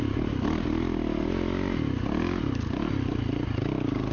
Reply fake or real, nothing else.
real